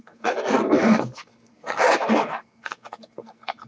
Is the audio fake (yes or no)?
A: yes